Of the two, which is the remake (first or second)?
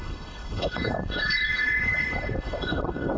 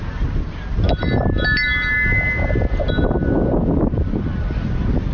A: first